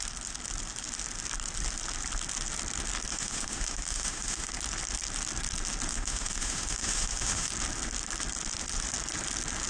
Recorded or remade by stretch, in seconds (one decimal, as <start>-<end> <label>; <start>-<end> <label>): 0.0-3.1 recorded; 3.1-4.5 remade; 4.5-5.9 recorded; 5.9-7.5 remade; 7.5-9.7 recorded